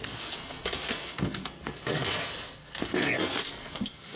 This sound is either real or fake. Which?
fake